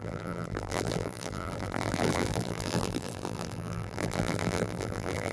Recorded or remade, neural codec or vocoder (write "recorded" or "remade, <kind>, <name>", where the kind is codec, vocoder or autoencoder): remade, vocoder, BigVGAN v2